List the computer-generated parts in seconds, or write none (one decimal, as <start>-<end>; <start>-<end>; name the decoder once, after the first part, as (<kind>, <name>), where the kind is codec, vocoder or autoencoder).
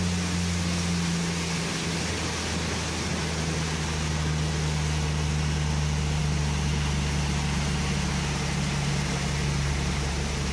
none